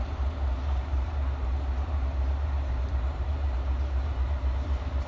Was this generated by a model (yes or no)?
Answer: yes